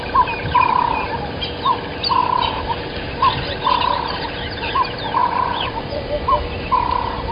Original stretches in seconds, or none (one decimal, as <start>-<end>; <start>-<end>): 0.0-5.2; 6.0-7.3